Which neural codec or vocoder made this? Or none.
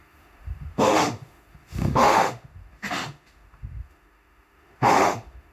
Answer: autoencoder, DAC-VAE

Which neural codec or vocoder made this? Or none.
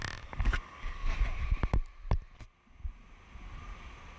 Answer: none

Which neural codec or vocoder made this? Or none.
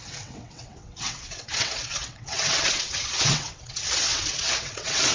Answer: vocoder, WaveNeXt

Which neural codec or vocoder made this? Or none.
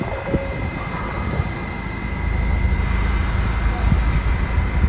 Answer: none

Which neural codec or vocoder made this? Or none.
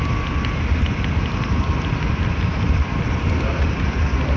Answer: none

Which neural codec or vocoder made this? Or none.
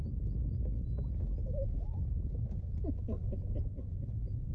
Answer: none